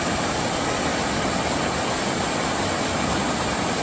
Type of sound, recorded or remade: recorded